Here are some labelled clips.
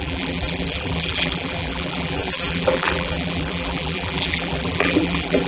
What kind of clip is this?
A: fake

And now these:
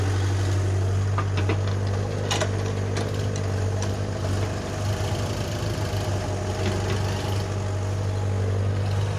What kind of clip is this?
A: real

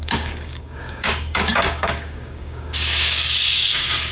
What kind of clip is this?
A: fake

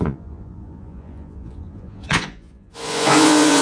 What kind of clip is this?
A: fake